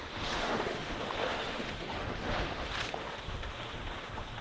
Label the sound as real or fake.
fake